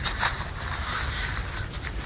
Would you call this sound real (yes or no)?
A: yes